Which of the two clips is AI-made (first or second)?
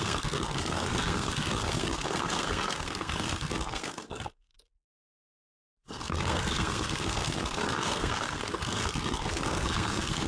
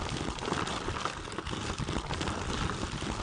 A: first